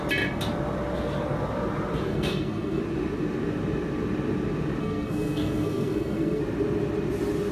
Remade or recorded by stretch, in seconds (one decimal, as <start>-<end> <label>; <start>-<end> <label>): 0.0-2.1 recorded; 2.1-2.8 remade; 2.8-4.8 recorded; 4.8-6.4 remade; 6.4-7.5 recorded